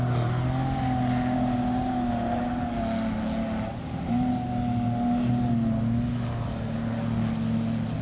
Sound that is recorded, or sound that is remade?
recorded